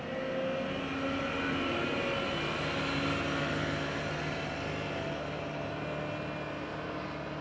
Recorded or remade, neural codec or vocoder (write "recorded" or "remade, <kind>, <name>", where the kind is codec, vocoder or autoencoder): recorded